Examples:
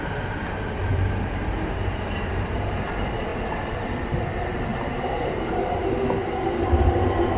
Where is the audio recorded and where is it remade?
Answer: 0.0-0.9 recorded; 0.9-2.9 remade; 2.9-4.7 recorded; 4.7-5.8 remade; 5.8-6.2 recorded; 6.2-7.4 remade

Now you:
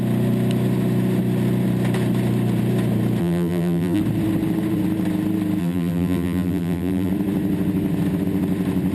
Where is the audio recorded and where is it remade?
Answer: 0.0-3.2 recorded; 3.2-4.0 remade; 4.0-5.6 recorded; 5.6-7.1 remade; 7.1-8.9 recorded

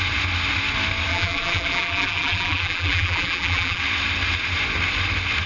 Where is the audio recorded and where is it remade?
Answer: 0.0-1.1 recorded; 1.1-3.8 remade; 3.8-5.5 recorded